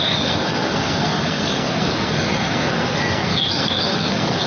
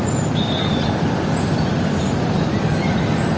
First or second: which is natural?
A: second